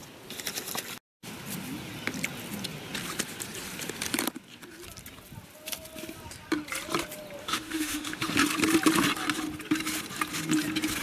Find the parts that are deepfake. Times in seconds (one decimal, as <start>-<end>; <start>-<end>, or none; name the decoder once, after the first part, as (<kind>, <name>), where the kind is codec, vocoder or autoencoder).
7.4-8.3 (autoencoder, DAC-VAE)